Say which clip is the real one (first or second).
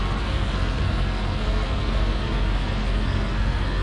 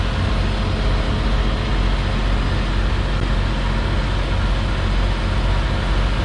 second